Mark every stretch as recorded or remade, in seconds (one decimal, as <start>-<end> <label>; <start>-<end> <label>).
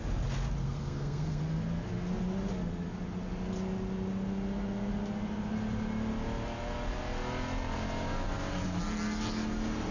0.0-0.6 recorded; 0.6-1.4 remade; 1.4-9.9 recorded